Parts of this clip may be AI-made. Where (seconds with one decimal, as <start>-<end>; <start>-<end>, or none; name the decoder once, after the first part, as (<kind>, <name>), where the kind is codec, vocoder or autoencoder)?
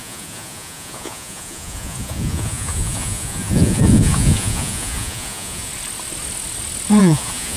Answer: 0.0-5.7 (vocoder, Vocos); 7.0-7.6